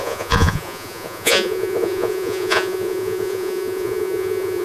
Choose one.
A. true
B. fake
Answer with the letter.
B